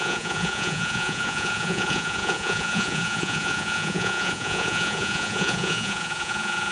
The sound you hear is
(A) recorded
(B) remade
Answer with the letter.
B